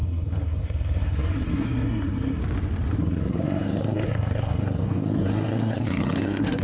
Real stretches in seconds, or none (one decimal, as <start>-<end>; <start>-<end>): 2.4-3.0